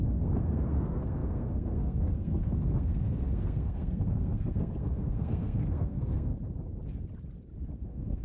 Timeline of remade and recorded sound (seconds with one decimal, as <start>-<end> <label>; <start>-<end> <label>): 0.0-6.3 remade; 6.3-7.7 recorded; 7.7-8.2 remade